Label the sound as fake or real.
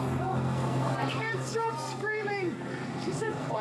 fake